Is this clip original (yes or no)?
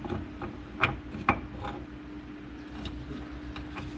yes